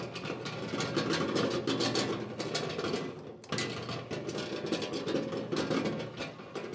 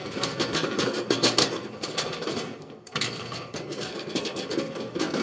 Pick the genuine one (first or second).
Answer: first